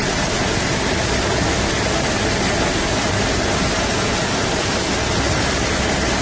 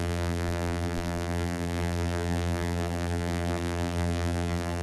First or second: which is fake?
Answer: second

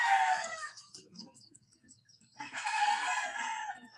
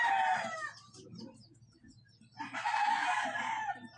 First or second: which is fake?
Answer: first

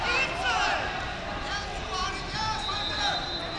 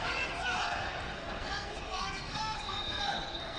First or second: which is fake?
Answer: second